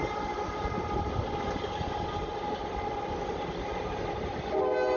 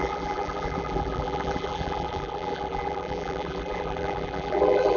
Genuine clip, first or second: first